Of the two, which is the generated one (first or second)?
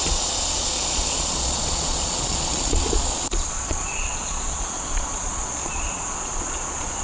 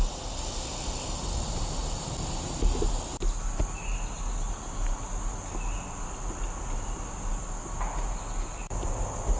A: first